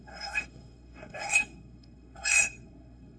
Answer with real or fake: fake